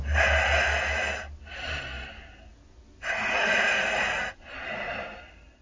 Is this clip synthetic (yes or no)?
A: no